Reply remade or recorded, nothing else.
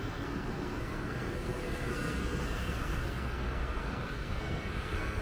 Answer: remade